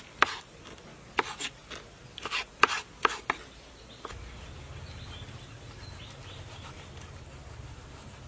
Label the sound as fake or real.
real